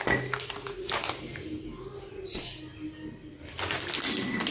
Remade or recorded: recorded